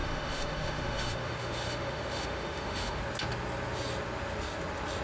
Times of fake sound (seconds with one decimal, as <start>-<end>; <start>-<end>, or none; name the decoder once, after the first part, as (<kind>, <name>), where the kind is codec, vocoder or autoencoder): 0.0-3.0 (autoencoder, DAC-VAE)